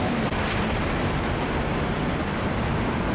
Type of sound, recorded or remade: recorded